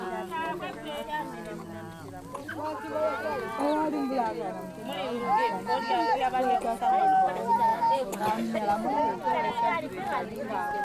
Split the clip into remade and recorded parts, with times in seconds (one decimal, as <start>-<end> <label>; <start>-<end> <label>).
0.0-7.7 recorded; 7.7-8.2 remade; 8.2-10.8 recorded